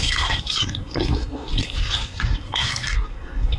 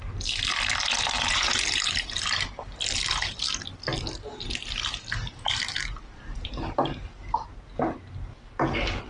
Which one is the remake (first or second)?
first